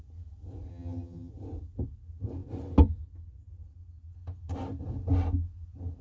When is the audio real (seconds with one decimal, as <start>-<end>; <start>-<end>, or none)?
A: 0.0-0.7; 1.3-6.0